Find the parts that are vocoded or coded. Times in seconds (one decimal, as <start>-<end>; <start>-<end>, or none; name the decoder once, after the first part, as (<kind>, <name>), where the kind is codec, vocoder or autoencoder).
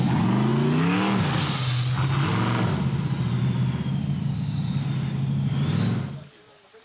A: none